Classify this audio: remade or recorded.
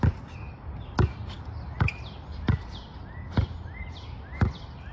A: recorded